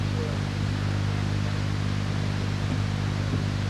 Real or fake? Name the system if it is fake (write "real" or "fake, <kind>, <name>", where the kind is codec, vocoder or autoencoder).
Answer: real